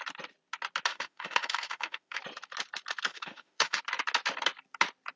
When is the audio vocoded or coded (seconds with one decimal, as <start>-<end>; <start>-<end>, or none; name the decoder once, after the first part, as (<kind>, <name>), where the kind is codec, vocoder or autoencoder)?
0.9-2.2 (autoencoder, DAC-VAE); 3.1-3.8